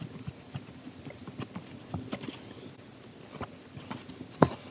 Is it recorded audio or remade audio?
recorded